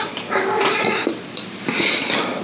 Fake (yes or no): no